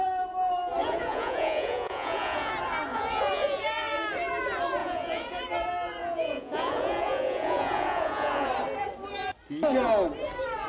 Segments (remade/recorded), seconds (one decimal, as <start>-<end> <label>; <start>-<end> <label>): 0.0-0.8 recorded; 0.8-2.5 remade; 2.5-2.9 recorded; 2.9-3.6 remade; 3.6-4.8 recorded; 4.8-5.4 remade; 5.4-6.0 recorded; 6.0-8.5 remade; 8.5-10.7 recorded